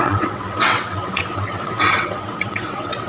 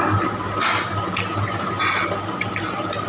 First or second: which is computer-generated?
first